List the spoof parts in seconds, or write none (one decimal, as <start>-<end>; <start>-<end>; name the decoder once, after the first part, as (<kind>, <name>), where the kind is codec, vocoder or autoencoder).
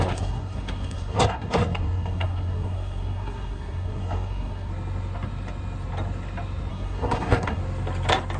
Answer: 0.0-4.7 (codec, SNAC); 6.7-7.6